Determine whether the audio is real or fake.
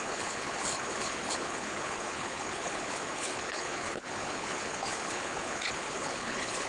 fake